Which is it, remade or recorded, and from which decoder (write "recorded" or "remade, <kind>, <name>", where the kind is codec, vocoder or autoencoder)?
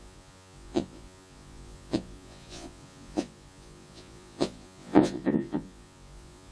remade, vocoder, Vocos